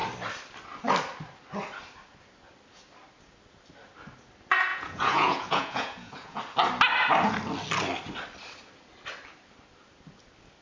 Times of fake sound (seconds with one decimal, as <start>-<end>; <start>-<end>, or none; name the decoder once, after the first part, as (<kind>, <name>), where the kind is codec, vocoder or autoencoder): 4.7-6.4 (vocoder, Vocos)